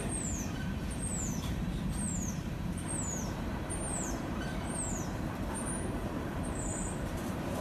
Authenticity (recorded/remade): remade